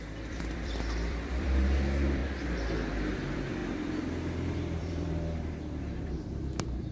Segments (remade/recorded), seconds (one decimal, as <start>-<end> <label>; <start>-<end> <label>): 0.0-2.2 remade; 2.2-3.1 recorded; 3.1-6.9 remade